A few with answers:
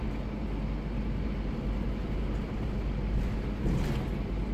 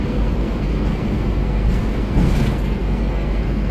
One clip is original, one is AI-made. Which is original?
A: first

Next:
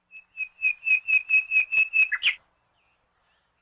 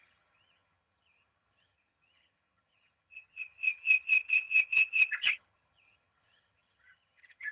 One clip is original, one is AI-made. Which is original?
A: first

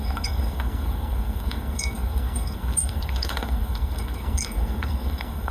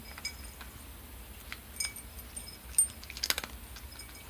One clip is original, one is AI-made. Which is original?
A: second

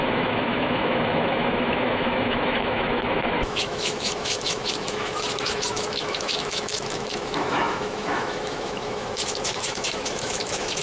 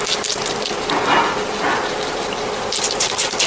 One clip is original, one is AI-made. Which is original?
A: second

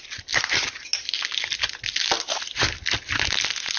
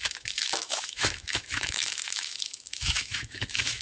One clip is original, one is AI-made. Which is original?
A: first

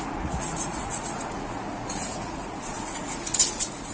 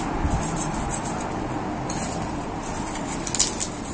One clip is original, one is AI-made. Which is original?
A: second